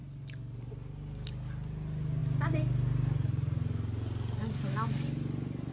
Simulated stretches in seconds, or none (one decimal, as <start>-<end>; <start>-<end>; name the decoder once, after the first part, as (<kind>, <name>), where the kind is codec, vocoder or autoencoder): none